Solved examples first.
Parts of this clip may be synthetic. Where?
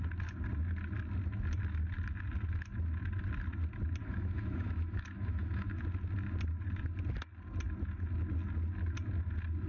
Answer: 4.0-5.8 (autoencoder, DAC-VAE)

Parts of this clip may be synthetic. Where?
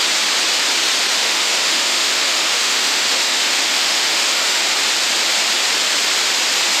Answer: 1.2-4.6 (autoencoder, DAC-VAE)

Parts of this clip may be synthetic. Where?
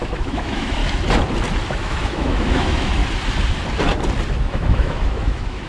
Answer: 0.0-0.8 (autoencoder, DAC-VAE); 1.7-3.0; 4.4-5.7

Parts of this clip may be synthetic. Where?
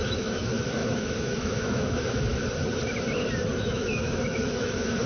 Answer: 0.0-2.3 (autoencoder, DAC-VAE); 3.6-5.1